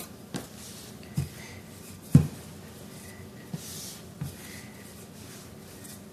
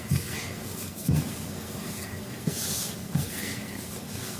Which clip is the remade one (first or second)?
second